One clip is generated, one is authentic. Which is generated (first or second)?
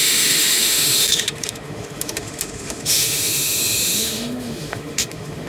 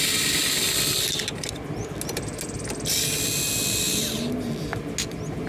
first